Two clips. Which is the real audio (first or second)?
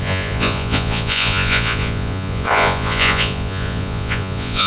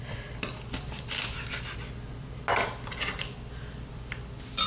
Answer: second